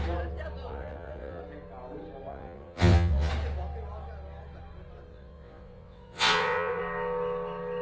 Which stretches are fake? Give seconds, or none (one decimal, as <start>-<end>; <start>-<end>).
0.7-1.4; 2.3-3.3; 5.1-6.8